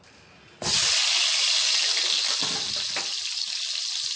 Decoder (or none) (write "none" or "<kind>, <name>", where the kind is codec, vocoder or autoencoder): none